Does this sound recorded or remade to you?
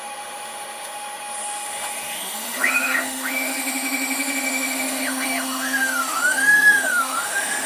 remade